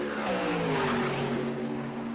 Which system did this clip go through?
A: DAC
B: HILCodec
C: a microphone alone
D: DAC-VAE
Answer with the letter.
A